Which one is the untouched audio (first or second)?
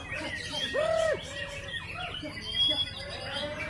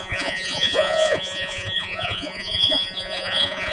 first